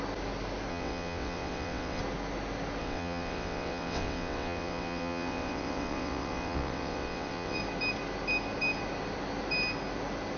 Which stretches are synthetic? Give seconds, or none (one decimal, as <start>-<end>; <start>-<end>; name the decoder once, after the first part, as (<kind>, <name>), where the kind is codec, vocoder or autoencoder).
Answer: 0.7-2.0 (vocoder, WaveNeXt); 2.8-7.6